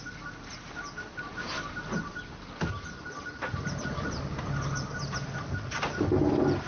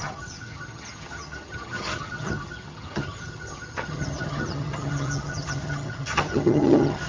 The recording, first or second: first